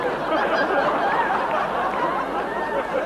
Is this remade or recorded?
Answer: recorded